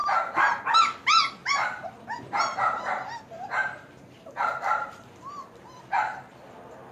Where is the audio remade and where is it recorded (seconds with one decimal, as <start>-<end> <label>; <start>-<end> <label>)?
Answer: 0.0-0.7 remade; 0.7-1.4 recorded; 1.4-5.5 remade; 5.5-6.9 recorded